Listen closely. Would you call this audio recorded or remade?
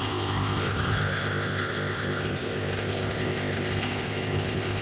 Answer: remade